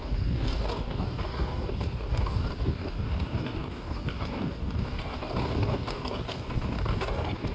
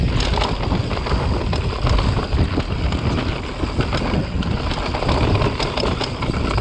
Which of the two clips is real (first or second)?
second